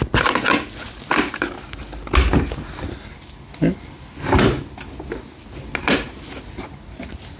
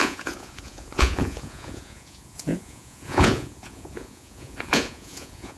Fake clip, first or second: second